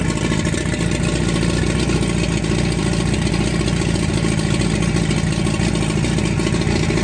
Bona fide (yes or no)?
yes